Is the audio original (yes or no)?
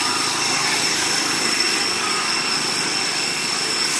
no